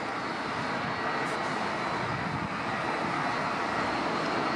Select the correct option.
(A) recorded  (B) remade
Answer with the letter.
A